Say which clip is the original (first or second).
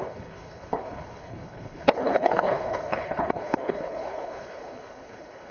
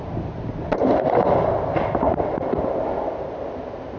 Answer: second